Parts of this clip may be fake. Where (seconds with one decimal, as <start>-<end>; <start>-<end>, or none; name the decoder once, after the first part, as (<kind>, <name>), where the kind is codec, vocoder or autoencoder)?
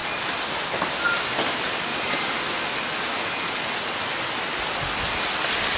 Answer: 0.0-0.9 (vocoder, BigVGAN v2)